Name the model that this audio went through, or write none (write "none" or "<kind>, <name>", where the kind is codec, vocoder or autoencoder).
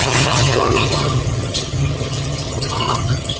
vocoder, HiFi-GAN